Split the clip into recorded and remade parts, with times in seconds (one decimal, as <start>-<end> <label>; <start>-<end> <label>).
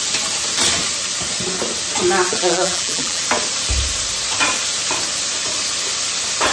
0.0-2.3 recorded; 2.3-3.2 remade; 3.2-6.5 recorded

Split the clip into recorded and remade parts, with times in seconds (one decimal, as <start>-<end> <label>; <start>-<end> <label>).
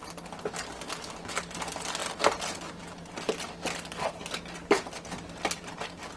0.0-6.2 recorded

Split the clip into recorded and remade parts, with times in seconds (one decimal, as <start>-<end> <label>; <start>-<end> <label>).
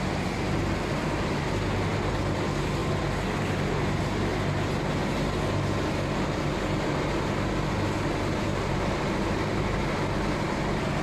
0.0-8.5 recorded; 8.5-9.8 remade; 9.8-11.0 recorded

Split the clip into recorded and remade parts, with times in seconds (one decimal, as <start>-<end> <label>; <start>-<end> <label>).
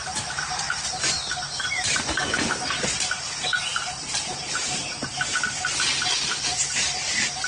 0.0-2.8 remade; 2.8-3.7 recorded; 3.7-5.7 remade; 5.7-7.5 recorded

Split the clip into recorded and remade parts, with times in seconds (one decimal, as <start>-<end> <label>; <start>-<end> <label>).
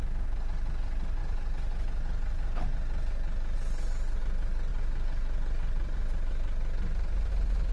0.0-4.7 recorded; 4.7-7.3 remade; 7.3-7.7 recorded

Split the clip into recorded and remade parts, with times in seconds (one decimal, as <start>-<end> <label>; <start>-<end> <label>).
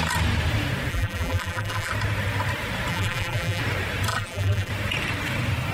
0.0-0.9 recorded; 0.9-1.9 remade; 1.9-2.9 recorded; 2.9-3.6 remade; 3.6-4.1 recorded; 4.1-4.7 remade; 4.7-5.7 recorded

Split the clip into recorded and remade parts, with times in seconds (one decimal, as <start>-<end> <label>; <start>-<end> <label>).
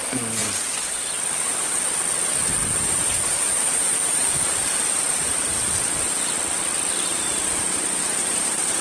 0.0-0.4 recorded; 0.4-1.2 remade; 1.2-2.6 recorded; 2.6-6.2 remade; 6.2-7.1 recorded; 7.1-8.8 remade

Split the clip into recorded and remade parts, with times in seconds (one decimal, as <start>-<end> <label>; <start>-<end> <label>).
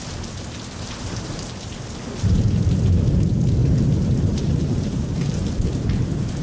0.0-3.6 recorded; 3.6-5.5 remade; 5.5-6.4 recorded